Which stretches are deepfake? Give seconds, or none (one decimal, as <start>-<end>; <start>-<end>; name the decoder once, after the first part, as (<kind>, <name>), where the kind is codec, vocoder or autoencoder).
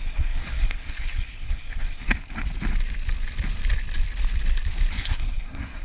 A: 0.0-2.0 (codec, SNAC); 5.0-5.8